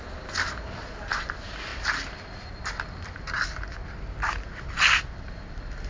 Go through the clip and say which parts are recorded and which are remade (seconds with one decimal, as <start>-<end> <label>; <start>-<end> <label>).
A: 0.0-5.9 recorded